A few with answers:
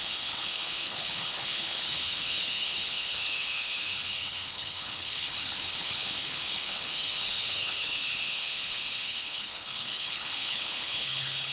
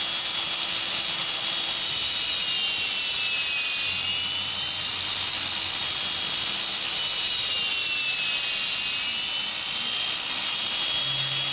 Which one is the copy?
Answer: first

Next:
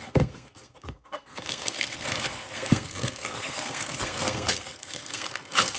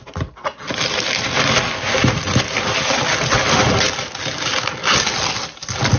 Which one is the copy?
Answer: first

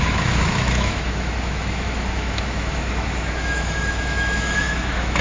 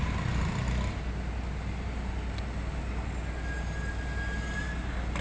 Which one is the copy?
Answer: first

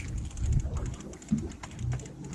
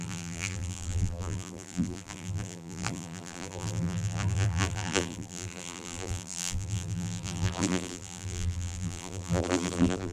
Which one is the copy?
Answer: second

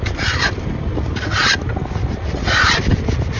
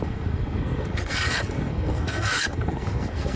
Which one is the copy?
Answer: second